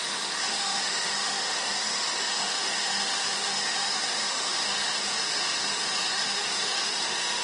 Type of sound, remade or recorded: remade